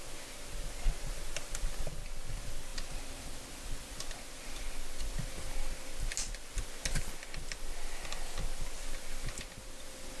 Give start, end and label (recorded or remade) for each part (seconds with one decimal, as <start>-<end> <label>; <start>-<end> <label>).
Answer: 0.0-10.2 recorded